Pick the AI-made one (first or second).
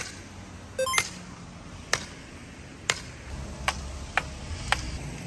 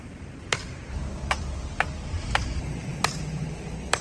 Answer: second